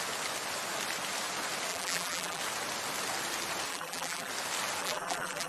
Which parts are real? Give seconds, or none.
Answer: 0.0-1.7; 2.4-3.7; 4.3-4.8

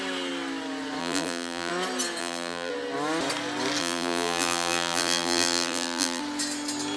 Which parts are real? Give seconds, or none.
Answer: 0.0-1.0; 1.7-2.2; 2.7-3.8; 6.2-7.0

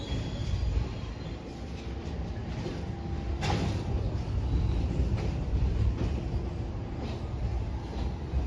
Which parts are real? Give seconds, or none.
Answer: 0.4-5.5; 7.5-8.5

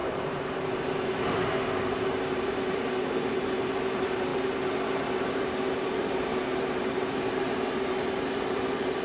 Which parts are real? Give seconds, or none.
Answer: none